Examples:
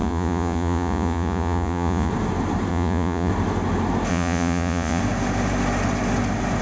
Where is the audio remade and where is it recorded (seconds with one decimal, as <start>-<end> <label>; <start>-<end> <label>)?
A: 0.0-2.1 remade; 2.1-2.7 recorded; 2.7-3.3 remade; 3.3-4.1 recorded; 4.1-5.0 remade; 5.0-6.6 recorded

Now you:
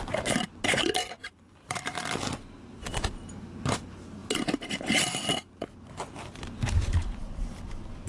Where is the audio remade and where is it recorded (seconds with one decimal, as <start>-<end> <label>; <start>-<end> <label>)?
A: 0.0-1.2 recorded; 1.2-1.8 remade; 1.8-8.1 recorded

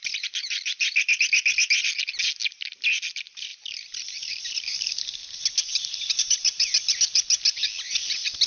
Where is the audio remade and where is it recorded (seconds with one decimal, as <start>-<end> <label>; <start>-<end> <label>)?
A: 0.0-1.0 remade; 1.0-3.5 recorded; 3.5-5.0 remade; 5.0-6.2 recorded; 6.2-6.7 remade; 6.7-8.5 recorded